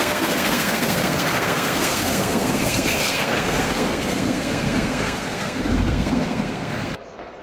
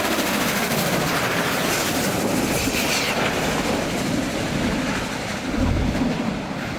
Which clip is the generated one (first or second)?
first